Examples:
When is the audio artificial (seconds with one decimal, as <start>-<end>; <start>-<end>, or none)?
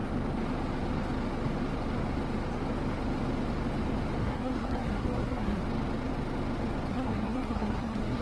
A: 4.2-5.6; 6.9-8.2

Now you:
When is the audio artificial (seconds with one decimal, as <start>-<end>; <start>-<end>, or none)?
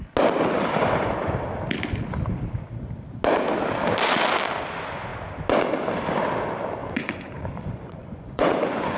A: 6.8-9.0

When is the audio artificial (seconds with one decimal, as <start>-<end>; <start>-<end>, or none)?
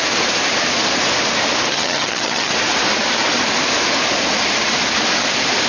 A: 1.7-2.5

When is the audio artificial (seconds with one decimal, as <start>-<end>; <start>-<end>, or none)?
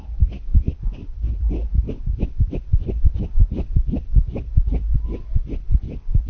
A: none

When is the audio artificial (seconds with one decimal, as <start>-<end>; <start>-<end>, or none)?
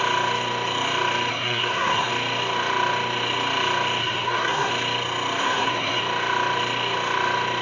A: 1.3-2.1; 4.0-4.7; 5.4-6.0